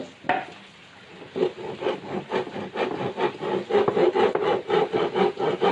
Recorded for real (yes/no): yes